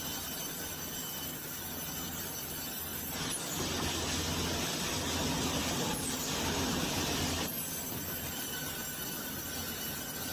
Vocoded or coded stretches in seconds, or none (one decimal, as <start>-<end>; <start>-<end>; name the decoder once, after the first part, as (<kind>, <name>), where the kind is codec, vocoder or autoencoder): 5.6-7.2 (vocoder, BigVGAN v2)